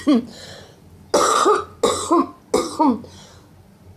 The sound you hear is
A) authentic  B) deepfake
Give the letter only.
A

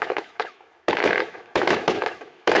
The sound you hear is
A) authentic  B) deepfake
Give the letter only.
B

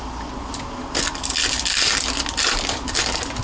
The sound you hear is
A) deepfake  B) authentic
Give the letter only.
B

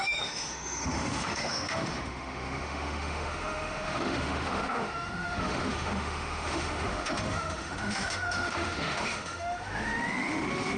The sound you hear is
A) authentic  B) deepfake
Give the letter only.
B